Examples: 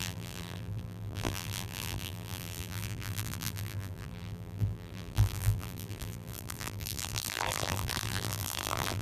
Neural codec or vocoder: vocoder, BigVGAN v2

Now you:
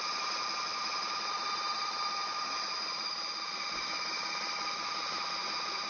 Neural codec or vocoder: vocoder, BigVGAN v2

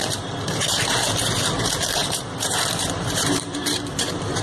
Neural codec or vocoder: vocoder, BigVGAN v2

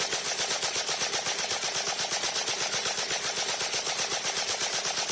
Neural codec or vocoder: vocoder, BigVGAN v2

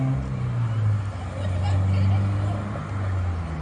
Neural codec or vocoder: none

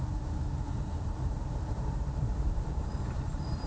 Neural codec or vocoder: vocoder, BigVGAN v2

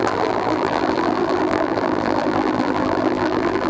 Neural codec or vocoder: vocoder, BigVGAN v2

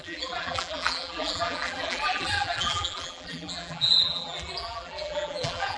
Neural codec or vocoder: vocoder, BigVGAN v2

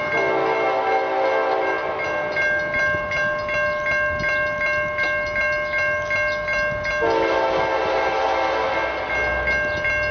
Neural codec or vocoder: none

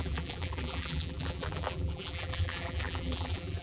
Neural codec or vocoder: vocoder, BigVGAN v2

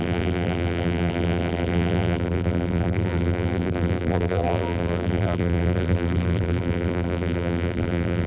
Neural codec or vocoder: vocoder, BigVGAN v2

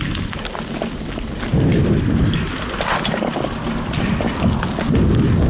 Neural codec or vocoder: none